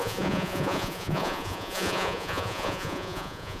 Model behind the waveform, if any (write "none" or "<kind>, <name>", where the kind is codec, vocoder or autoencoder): vocoder, Vocos